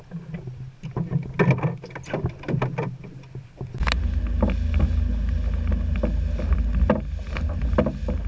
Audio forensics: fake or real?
real